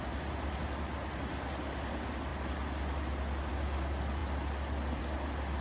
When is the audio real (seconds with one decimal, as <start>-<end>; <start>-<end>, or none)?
0.0-5.6

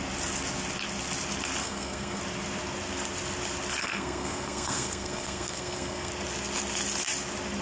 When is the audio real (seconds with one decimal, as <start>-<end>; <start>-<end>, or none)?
0.0-1.6; 2.2-3.8; 6.1-7.6